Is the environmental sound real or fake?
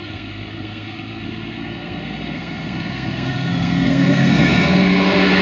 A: fake